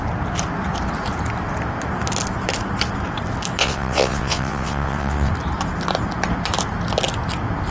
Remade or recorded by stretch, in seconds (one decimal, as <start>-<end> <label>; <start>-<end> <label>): 0.0-3.6 recorded; 3.6-5.3 remade; 5.3-7.7 recorded